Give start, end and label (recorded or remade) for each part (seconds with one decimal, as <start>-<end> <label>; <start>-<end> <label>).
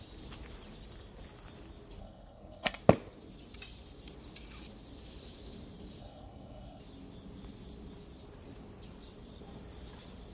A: 0.0-2.0 recorded; 2.0-2.8 remade; 2.8-6.0 recorded; 6.0-6.8 remade; 6.8-10.3 recorded